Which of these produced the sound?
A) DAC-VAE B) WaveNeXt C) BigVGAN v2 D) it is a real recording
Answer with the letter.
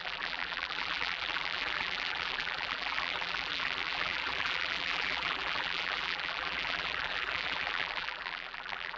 C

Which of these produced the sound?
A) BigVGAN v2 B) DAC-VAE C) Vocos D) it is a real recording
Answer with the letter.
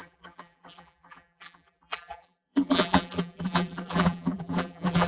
A